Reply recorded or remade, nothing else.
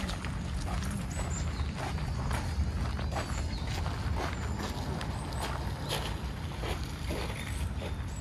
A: recorded